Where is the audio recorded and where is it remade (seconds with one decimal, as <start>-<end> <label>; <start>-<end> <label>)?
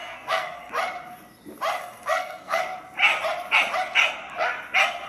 0.0-0.7 remade; 0.7-1.8 recorded; 1.8-2.6 remade; 2.6-5.1 recorded